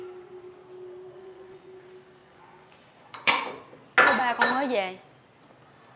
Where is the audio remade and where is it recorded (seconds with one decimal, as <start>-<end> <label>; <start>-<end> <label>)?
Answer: 0.0-1.2 recorded; 1.2-1.8 remade; 1.8-2.2 recorded; 2.2-3.5 remade; 3.5-6.0 recorded

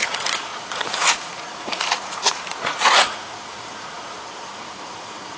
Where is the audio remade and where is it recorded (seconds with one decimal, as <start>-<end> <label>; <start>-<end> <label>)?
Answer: 0.0-5.4 remade